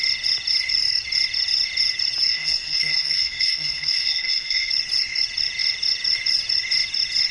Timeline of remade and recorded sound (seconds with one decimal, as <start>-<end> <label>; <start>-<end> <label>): 0.0-2.3 recorded; 2.3-4.7 remade; 4.7-7.3 recorded